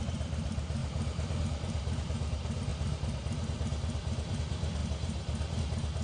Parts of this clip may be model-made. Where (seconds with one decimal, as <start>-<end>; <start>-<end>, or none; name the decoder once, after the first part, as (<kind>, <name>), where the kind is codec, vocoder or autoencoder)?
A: 0.0-6.0 (vocoder, BigVGAN v2)

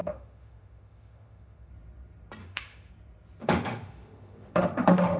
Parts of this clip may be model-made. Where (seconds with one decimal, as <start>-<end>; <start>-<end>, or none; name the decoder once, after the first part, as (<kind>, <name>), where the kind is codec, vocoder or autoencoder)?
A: 0.0-1.7 (autoencoder, DAC-VAE); 2.4-2.9; 3.4-5.2

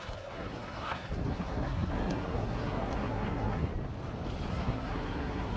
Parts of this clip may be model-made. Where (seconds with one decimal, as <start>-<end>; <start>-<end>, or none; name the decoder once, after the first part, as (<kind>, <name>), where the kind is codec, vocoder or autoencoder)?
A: 0.0-3.7 (codec, SNAC); 4.5-5.6

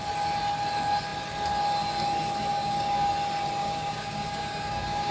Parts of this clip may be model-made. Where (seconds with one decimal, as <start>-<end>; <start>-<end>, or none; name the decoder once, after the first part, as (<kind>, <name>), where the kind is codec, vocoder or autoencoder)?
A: 2.5-3.1 (codec, DAC); 3.6-5.1